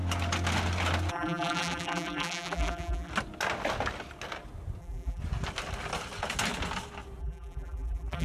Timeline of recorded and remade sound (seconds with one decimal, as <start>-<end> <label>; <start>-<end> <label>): 0.0-1.1 recorded; 1.1-3.1 remade; 3.1-4.8 recorded; 4.8-5.2 remade; 5.2-7.2 recorded; 7.2-8.2 remade